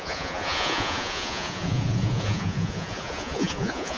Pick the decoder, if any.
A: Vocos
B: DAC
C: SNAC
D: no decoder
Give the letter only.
A